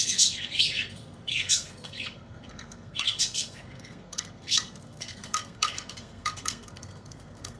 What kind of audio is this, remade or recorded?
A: remade